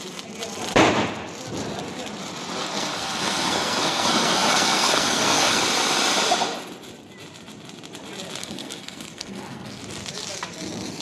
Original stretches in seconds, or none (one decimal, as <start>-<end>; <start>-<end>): 0.0-2.6; 5.6-8.4; 9.8-11.0